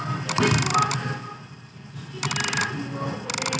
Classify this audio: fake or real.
real